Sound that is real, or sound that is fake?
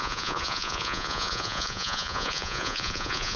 fake